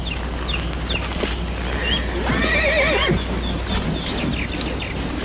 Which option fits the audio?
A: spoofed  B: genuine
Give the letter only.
B